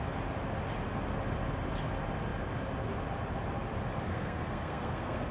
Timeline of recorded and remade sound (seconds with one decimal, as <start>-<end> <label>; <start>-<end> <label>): 0.0-4.1 recorded; 4.1-5.3 remade